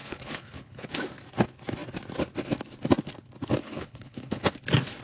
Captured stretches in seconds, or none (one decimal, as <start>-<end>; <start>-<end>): 0.9-3.6; 4.4-5.0

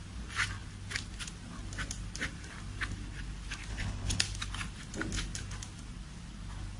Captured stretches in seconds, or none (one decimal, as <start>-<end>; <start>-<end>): 0.0-3.7; 4.2-6.8

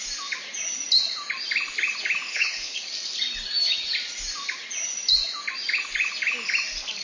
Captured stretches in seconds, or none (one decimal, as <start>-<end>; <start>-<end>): 0.0-2.3; 2.9-7.0

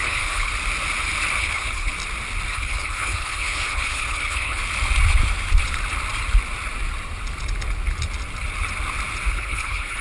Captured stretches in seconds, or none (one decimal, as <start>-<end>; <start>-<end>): 0.5-1.4; 1.9-2.5; 4.6-9.3

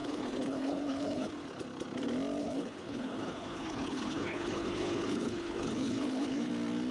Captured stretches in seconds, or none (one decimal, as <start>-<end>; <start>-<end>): 1.3-2.4; 6.5-6.9

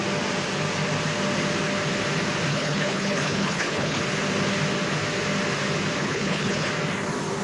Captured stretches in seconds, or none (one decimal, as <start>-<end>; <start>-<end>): 0.0-2.5; 4.0-6.0; 6.7-7.4

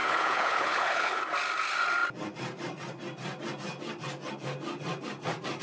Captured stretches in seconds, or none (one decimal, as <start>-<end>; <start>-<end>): 1.2-5.6

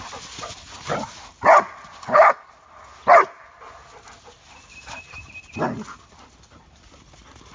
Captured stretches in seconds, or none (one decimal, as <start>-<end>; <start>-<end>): 0.0-2.0; 2.5-7.5